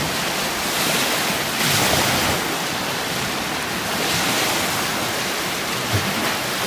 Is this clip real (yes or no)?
yes